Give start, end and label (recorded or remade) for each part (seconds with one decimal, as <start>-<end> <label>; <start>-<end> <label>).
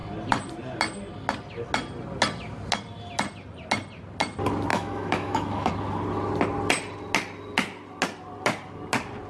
0.0-4.7 recorded; 4.7-5.7 remade; 5.7-9.3 recorded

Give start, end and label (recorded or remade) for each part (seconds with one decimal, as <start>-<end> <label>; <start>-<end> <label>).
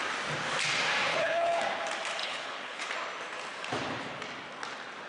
0.0-1.1 recorded; 1.1-1.6 remade; 1.6-2.2 recorded; 2.2-2.9 remade; 2.9-5.1 recorded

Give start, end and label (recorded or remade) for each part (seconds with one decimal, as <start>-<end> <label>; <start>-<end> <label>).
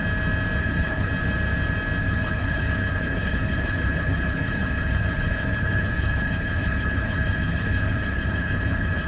0.0-0.6 recorded; 0.6-1.1 remade; 1.1-2.0 recorded; 2.0-9.1 remade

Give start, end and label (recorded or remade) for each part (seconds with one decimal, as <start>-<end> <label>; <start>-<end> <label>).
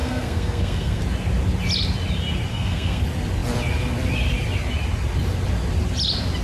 0.0-1.0 remade; 1.0-2.5 recorded; 2.5-3.0 remade; 3.0-6.4 recorded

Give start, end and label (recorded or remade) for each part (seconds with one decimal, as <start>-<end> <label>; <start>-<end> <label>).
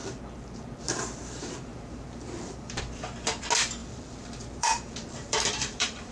0.0-1.0 remade; 1.0-1.7 recorded; 1.7-2.8 remade; 2.8-3.8 recorded; 3.8-6.1 remade